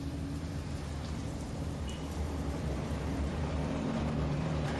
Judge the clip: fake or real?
fake